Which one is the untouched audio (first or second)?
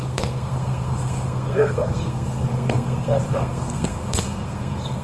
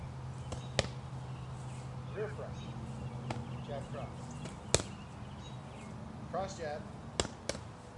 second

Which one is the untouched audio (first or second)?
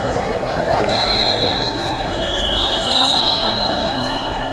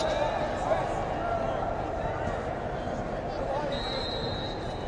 second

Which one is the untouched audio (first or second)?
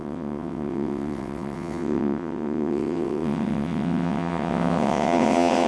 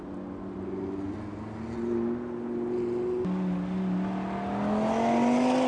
second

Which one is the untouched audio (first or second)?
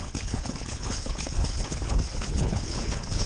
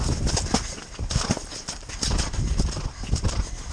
second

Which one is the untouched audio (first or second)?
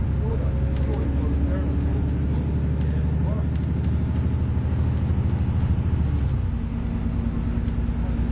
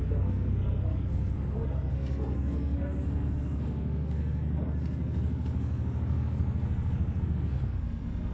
first